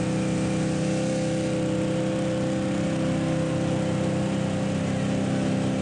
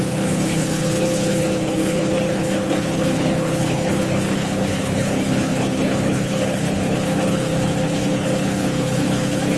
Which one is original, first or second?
first